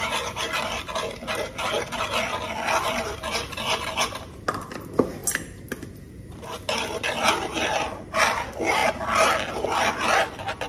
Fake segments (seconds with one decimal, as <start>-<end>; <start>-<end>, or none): none